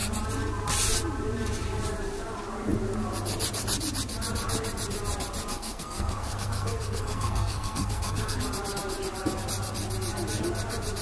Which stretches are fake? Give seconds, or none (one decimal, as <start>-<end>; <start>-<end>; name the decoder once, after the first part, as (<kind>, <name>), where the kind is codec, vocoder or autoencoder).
5.5-8.4 (codec, SNAC)